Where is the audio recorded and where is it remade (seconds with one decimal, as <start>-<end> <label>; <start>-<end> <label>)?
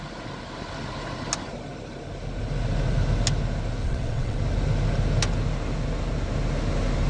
0.0-3.8 recorded; 3.8-4.4 remade; 4.4-7.1 recorded